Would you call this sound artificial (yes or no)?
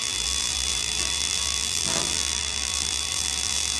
yes